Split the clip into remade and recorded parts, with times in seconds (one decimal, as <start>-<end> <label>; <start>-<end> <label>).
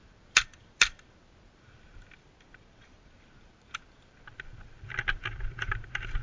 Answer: 0.0-6.2 recorded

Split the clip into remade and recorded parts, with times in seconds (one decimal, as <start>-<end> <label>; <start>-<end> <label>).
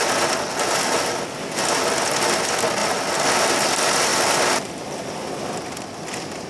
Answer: 0.0-6.5 recorded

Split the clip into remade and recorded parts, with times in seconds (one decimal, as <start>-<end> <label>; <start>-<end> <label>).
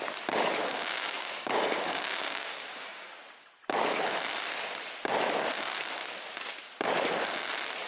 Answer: 0.0-0.7 recorded; 0.7-3.1 remade; 3.1-7.9 recorded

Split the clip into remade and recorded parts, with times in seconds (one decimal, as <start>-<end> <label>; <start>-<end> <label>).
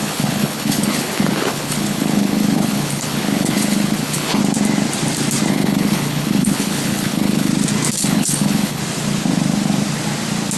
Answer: 0.0-4.4 remade; 4.4-5.5 recorded; 5.5-7.5 remade; 7.5-8.0 recorded; 8.0-8.8 remade; 8.8-10.6 recorded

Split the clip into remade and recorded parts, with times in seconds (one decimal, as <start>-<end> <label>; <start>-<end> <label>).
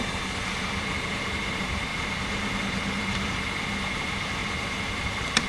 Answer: 0.0-5.5 remade